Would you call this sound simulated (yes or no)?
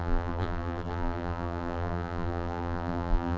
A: yes